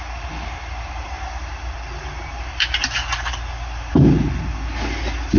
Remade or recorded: recorded